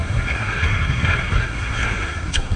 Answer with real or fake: fake